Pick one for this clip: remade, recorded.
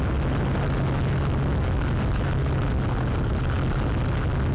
recorded